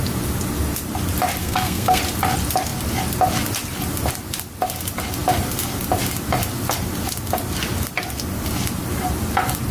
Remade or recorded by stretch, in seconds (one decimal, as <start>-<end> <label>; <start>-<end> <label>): 0.0-1.4 recorded; 1.4-2.0 remade; 2.0-9.7 recorded